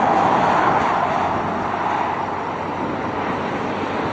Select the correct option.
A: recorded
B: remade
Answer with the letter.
A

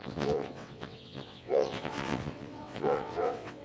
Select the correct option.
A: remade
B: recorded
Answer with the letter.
A